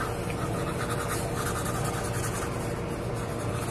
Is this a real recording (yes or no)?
yes